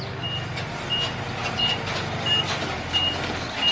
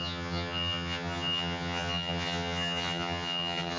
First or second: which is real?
first